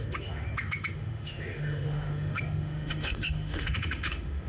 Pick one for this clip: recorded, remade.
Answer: remade